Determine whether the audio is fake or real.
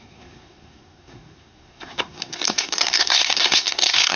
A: fake